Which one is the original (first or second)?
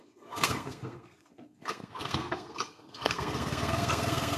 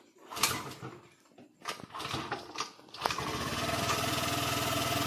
second